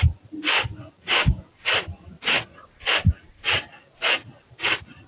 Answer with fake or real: real